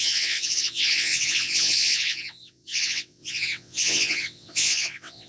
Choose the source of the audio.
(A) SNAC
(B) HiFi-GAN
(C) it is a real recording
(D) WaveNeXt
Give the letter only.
D